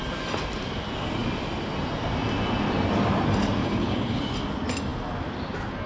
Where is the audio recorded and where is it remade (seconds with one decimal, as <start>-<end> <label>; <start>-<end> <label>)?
0.0-3.6 recorded; 3.6-4.2 remade; 4.2-5.9 recorded